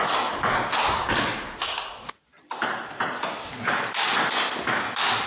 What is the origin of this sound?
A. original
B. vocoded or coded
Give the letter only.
A